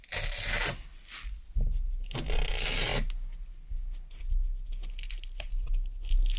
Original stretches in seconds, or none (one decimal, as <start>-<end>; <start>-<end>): 0.0-6.4